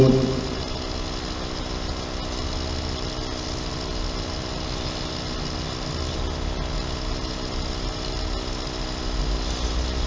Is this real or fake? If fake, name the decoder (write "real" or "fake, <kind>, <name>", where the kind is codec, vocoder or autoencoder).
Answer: real